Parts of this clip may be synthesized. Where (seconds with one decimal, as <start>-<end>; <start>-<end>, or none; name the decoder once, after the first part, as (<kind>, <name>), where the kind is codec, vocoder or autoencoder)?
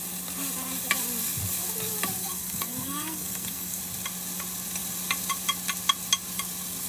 2.2-3.8 (codec, SNAC)